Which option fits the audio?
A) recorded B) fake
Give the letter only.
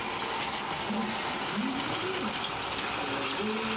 A